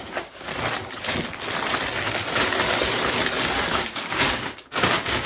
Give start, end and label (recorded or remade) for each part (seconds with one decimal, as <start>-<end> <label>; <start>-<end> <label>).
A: 0.0-0.5 remade; 0.5-3.7 recorded; 3.7-5.3 remade